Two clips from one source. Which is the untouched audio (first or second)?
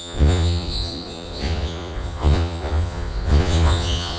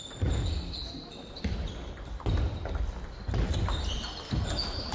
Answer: second